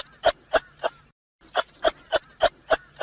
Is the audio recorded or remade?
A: recorded